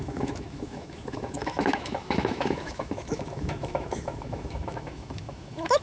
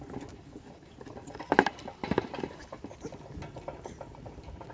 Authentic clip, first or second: second